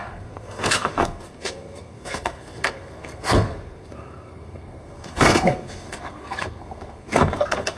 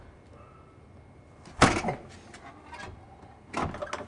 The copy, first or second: first